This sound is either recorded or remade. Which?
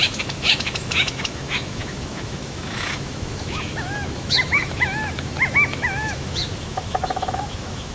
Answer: remade